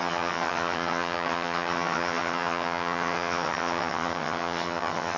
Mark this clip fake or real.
fake